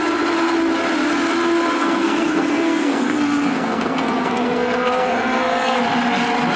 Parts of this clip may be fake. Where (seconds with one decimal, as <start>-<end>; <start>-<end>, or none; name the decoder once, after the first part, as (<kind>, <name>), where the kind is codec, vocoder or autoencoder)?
1.8-5.8 (codec, SNAC)